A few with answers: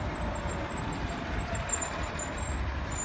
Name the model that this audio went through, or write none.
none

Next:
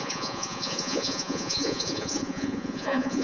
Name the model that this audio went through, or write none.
vocoder, Vocos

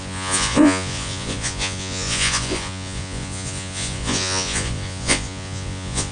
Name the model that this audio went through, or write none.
vocoder, Vocos